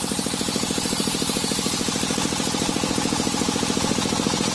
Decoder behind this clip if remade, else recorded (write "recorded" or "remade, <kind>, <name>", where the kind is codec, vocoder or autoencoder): recorded